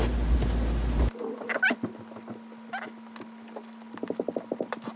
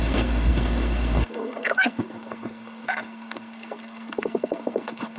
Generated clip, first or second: second